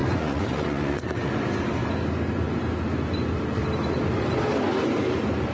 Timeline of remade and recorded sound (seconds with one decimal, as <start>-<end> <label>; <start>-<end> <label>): 0.0-1.3 remade; 1.3-5.5 recorded